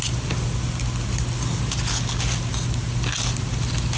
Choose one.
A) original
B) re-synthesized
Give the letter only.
A